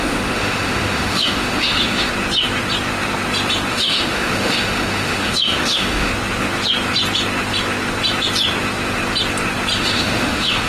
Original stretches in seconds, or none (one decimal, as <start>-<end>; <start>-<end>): 2.1-3.7; 6.1-9.8